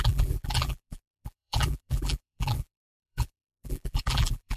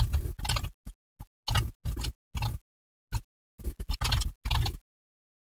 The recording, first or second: second